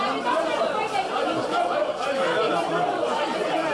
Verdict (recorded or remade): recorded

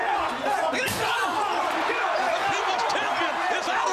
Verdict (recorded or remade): recorded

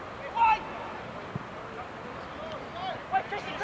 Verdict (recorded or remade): recorded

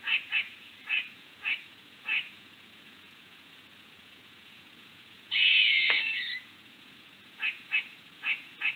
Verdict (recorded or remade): remade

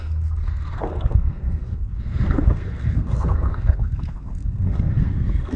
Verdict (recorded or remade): remade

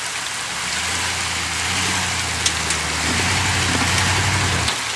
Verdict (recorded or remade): recorded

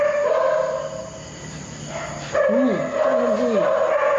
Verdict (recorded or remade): recorded